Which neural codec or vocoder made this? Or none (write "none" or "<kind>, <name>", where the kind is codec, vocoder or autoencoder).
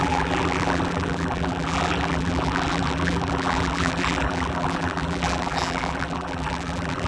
vocoder, BigVGAN v2